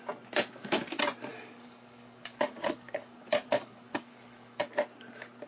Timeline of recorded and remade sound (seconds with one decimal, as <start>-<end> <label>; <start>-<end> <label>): 0.0-1.3 recorded; 1.3-4.6 remade; 4.6-5.5 recorded